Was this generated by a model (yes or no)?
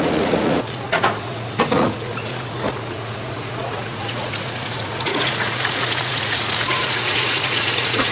yes